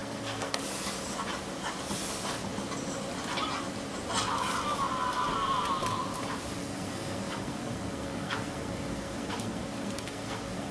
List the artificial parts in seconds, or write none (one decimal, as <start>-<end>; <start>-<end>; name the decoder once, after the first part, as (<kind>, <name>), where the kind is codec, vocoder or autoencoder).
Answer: 0.0-0.6 (codec, SNAC); 6.6-10.7